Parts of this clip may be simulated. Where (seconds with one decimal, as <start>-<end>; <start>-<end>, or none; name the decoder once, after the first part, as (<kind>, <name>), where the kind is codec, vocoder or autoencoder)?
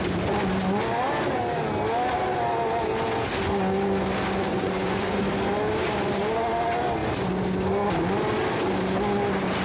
4.5-5.2 (vocoder, Vocos)